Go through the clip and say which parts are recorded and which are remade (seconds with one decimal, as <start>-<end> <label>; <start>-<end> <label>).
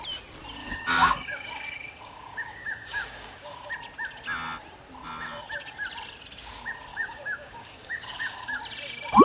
0.0-0.6 recorded; 0.6-3.7 remade; 3.7-6.9 recorded; 6.9-8.6 remade; 8.6-9.2 recorded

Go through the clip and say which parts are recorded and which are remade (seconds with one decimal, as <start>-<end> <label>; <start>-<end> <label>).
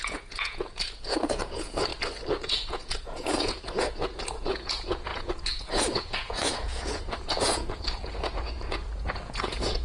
0.0-1.9 remade; 1.9-2.4 recorded; 2.4-9.8 remade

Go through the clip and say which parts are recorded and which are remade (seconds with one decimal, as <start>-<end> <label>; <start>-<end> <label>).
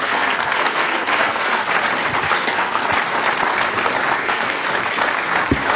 0.0-1.6 remade; 1.6-2.3 recorded; 2.3-2.8 remade; 2.8-4.1 recorded; 4.1-4.6 remade; 4.6-5.8 recorded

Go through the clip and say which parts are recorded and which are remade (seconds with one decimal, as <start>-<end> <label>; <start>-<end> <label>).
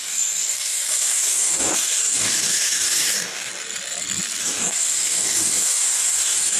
0.0-3.5 remade; 3.5-4.4 recorded; 4.4-6.6 remade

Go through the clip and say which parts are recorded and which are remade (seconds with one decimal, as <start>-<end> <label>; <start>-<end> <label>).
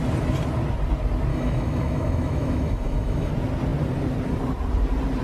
0.0-1.3 recorded; 1.3-3.3 remade; 3.3-5.2 recorded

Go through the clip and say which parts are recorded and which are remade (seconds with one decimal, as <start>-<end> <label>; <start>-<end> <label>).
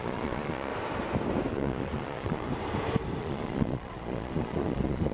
0.0-0.7 remade; 0.7-1.5 recorded; 1.5-2.5 remade; 2.5-3.2 recorded; 3.2-5.1 remade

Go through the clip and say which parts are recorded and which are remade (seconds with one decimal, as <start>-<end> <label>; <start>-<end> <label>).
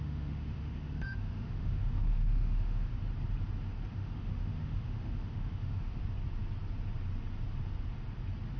0.0-2.9 remade; 2.9-3.9 recorded; 3.9-6.0 remade; 6.0-8.6 recorded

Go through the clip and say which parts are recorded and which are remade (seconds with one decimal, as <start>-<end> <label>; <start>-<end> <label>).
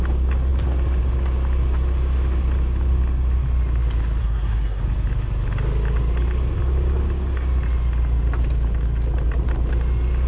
0.0-4.2 recorded; 4.2-4.8 remade; 4.8-10.3 recorded